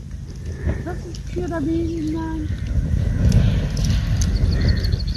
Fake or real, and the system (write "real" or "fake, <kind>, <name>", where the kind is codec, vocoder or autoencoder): real